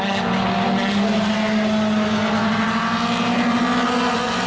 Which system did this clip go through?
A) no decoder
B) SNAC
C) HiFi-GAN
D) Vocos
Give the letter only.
A